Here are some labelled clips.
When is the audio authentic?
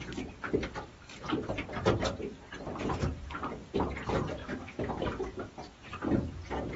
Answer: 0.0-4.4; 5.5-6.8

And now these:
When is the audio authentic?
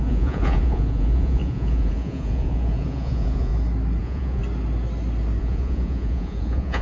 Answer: 3.5-4.0; 4.4-5.4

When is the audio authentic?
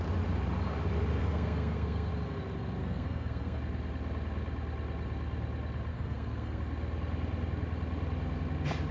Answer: 0.0-1.2; 2.1-2.8; 3.6-5.9; 6.6-8.9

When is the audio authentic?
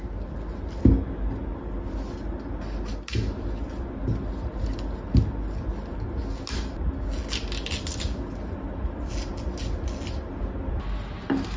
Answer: 0.0-11.6